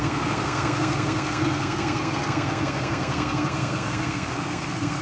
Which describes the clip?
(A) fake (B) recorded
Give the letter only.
A